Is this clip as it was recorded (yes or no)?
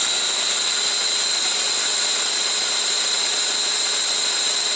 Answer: yes